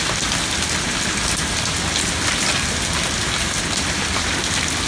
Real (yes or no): yes